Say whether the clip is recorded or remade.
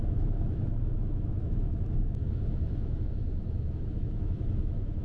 remade